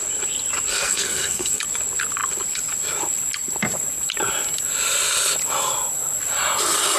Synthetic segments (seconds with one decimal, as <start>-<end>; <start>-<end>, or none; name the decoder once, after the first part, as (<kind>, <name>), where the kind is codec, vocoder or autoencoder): 0.7-1.6 (codec, SNAC)